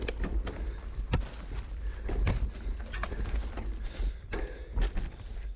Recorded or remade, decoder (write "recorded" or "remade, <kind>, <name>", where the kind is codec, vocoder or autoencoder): recorded